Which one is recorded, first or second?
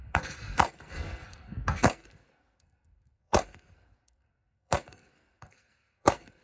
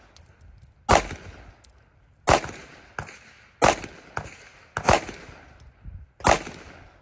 second